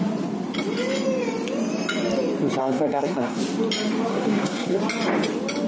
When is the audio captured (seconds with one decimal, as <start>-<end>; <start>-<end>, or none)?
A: 0.0-2.6; 3.4-4.1; 4.8-5.7

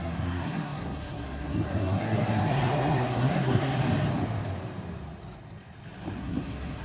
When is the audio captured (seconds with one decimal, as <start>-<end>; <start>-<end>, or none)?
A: 3.8-6.2